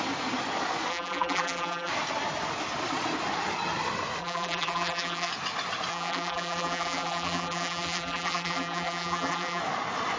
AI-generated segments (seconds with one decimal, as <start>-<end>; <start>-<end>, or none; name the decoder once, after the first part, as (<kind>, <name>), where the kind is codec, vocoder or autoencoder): 0.9-1.9 (vocoder, BigVGAN v2); 4.2-5.3; 5.9-9.6

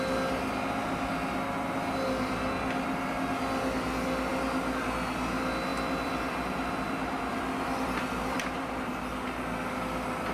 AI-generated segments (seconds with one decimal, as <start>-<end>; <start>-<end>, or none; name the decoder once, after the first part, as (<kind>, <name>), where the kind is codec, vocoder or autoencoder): 4.3-4.8 (vocoder, BigVGAN v2); 5.7-8.7

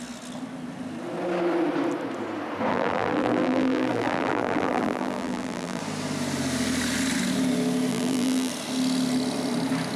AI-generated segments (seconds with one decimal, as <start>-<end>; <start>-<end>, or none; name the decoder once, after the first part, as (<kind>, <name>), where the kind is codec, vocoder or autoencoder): 2.7-5.8 (vocoder, BigVGAN v2); 7.9-8.5

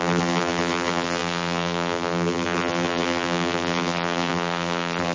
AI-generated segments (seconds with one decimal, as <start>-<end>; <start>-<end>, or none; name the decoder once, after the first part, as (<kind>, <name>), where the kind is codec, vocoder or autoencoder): 0.0-5.1 (vocoder, BigVGAN v2)

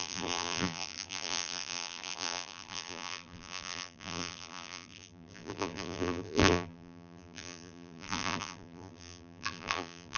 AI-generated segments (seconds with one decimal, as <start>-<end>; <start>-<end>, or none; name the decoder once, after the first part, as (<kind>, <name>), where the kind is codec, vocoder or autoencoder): 0.0-10.2 (vocoder, BigVGAN v2)

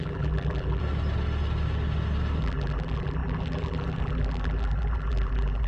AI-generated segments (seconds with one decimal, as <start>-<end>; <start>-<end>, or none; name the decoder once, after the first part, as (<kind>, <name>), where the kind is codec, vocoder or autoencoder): 0.0-0.8 (vocoder, BigVGAN v2); 2.4-5.7

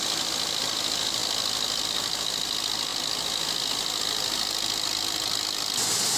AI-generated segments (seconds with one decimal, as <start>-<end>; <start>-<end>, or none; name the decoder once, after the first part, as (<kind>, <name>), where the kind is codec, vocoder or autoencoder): none

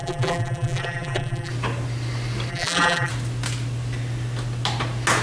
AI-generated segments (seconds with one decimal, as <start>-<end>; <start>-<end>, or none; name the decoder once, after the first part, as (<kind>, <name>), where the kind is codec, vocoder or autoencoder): 0.0-1.5 (vocoder, BigVGAN v2); 2.5-3.1